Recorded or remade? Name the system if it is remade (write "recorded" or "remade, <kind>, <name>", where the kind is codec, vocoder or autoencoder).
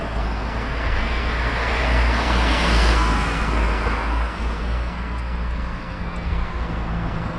remade, codec, SNAC